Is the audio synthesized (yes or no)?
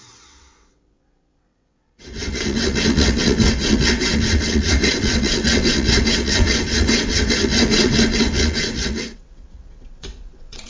yes